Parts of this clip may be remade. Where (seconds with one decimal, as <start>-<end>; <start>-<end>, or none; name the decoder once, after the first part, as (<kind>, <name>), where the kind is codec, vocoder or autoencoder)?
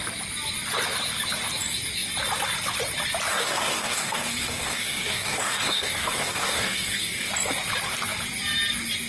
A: 3.3-7.3 (codec, DAC)